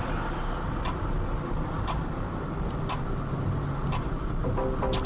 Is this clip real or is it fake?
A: real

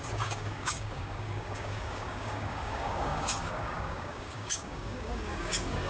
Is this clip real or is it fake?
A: fake